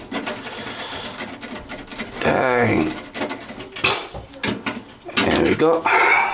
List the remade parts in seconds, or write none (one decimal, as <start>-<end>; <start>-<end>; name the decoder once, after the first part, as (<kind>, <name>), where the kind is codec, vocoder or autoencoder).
none